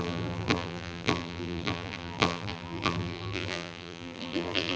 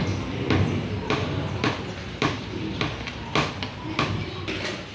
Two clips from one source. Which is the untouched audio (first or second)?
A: second